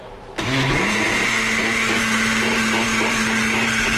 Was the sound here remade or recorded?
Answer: recorded